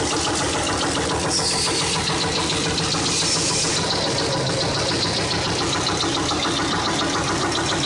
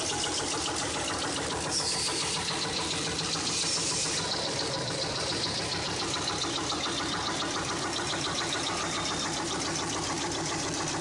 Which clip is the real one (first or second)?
first